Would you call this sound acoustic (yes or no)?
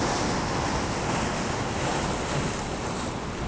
yes